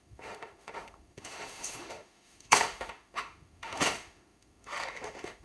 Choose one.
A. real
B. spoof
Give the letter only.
B